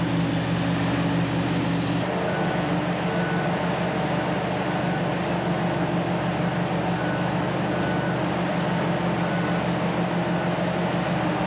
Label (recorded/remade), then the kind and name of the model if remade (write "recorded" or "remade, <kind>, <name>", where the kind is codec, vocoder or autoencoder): recorded